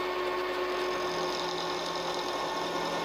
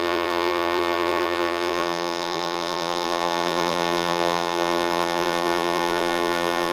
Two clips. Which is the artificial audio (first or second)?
second